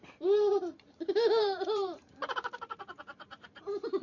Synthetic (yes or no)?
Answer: yes